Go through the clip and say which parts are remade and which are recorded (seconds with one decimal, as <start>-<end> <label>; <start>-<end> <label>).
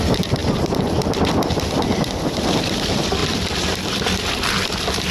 0.0-5.1 remade